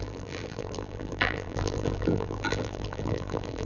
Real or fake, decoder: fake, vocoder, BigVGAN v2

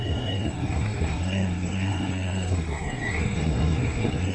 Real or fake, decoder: fake, codec, SNAC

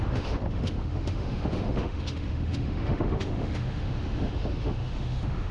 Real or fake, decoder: fake, autoencoder, DAC-VAE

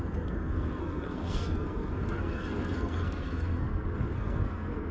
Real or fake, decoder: fake, codec, SNAC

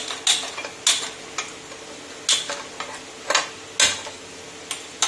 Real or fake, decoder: real